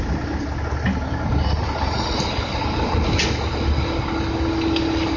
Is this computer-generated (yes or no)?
no